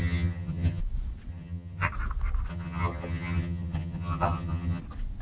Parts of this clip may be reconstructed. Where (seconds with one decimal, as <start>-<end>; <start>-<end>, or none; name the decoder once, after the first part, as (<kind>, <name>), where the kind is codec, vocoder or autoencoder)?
0.0-0.8 (vocoder, HiFi-GAN); 1.3-1.9; 2.5-4.8